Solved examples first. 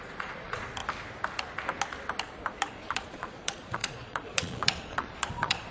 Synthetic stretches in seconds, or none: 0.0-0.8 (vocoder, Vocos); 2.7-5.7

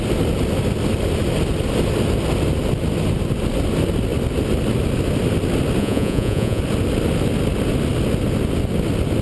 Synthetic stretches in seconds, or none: 5.8-6.6 (vocoder, Vocos)

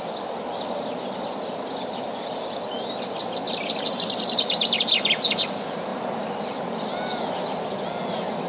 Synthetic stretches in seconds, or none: none

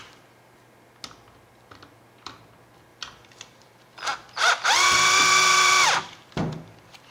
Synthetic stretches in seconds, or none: 2.9-7.1 (vocoder, BigVGAN v2)

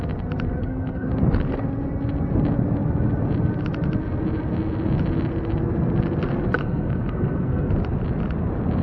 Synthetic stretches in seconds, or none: 0.6-1.1 (codec, SNAC); 6.6-7.7

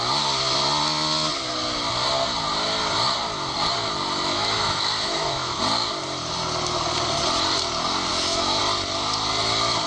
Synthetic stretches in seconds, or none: 4.3-5.6 (autoencoder, DAC-VAE); 8.1-8.6

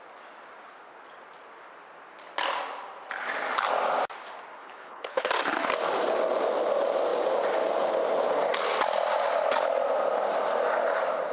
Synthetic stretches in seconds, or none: 4.6-5.3 (codec, HILCodec)